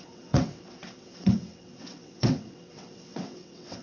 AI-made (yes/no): yes